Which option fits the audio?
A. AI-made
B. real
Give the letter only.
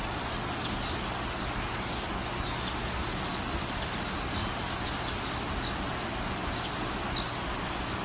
B